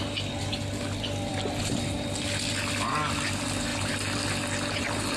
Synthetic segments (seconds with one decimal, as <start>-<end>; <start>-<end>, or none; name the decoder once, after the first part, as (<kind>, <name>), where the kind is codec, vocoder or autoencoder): none